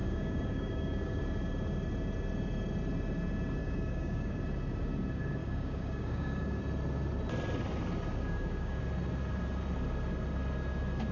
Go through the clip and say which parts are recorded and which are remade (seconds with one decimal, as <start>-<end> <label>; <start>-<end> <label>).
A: 0.0-1.2 remade; 1.2-3.6 recorded; 3.6-4.4 remade; 4.4-5.4 recorded; 5.4-6.6 remade; 6.6-8.1 recorded; 8.1-8.8 remade; 8.8-11.1 recorded